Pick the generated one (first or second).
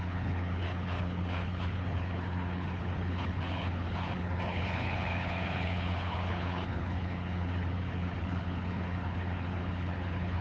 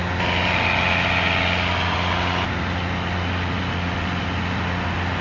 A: first